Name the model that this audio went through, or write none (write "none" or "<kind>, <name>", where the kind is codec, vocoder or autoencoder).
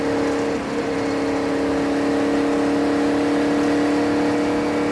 none